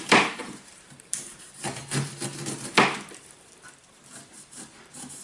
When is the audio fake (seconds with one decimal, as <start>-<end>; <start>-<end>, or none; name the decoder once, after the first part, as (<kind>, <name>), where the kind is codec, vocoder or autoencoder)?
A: 0.0-1.8 (vocoder, BigVGAN v2); 4.8-5.2